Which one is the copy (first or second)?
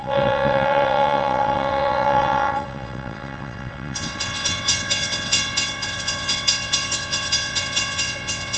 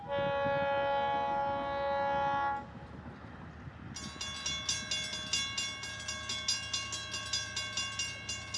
first